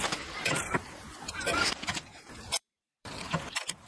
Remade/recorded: remade